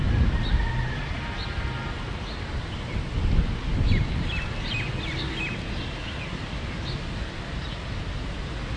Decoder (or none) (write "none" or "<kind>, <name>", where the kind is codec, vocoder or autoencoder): none